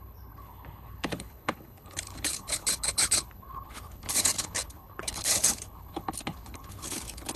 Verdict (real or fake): fake